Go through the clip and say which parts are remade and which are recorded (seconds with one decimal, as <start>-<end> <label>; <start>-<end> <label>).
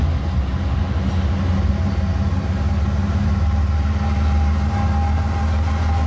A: 0.0-1.7 recorded; 1.7-2.1 remade; 2.1-6.1 recorded